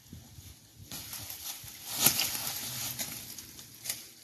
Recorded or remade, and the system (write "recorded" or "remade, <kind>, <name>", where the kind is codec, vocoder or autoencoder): recorded